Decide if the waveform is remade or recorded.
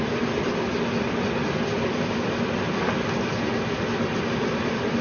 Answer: recorded